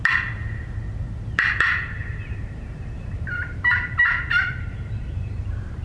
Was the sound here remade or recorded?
remade